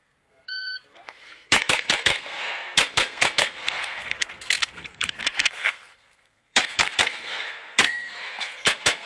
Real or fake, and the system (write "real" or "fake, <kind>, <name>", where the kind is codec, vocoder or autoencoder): fake, codec, SNAC